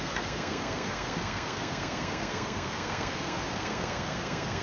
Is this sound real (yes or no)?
no